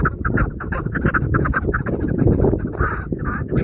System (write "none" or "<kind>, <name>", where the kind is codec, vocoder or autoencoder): none